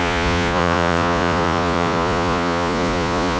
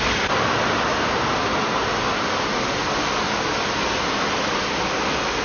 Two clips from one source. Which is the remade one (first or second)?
first